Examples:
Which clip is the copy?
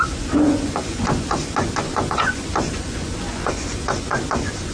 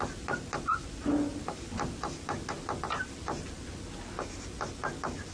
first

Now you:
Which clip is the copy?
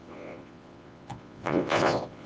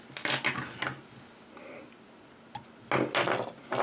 first